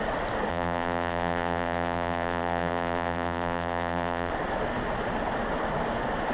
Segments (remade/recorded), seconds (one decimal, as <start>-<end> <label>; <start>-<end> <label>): 0.0-0.5 recorded; 0.5-4.3 remade; 4.3-6.3 recorded

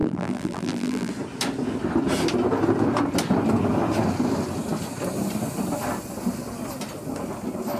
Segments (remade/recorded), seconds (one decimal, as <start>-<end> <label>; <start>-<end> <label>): 0.0-1.1 remade; 1.1-7.8 recorded